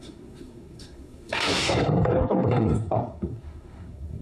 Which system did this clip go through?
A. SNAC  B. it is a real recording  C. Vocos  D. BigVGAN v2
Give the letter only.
A